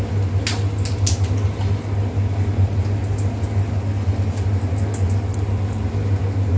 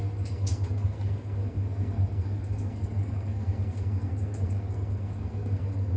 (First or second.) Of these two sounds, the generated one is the second